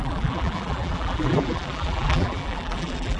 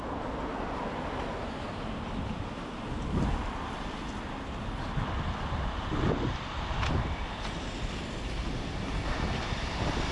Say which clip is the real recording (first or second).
second